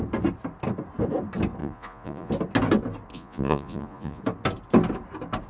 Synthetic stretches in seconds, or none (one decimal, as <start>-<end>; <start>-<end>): 1.6-2.3; 3.1-4.2